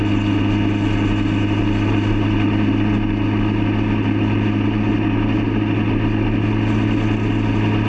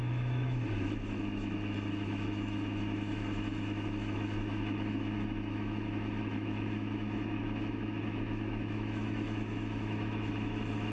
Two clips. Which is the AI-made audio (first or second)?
second